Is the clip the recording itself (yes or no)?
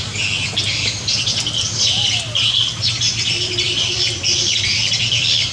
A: yes